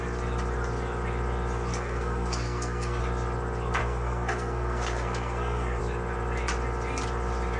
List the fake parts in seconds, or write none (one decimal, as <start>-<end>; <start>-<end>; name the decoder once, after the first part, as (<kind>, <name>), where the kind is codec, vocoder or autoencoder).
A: 1.7-3.0 (codec, SNAC); 3.8-5.8